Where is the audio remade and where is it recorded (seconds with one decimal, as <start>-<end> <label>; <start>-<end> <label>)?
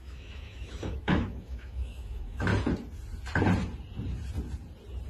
0.0-2.5 remade; 2.5-5.1 recorded